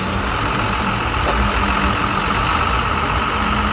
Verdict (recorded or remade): recorded